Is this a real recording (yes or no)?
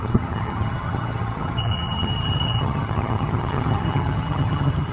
no